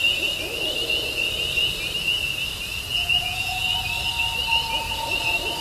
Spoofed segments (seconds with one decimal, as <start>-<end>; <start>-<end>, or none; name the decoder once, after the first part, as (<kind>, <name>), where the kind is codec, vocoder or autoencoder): 2.9-3.6 (vocoder, Vocos)